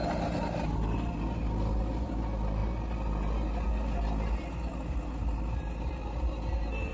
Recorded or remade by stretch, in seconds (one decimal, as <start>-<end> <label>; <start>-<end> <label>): 0.0-6.9 recorded